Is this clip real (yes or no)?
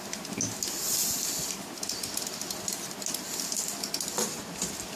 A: yes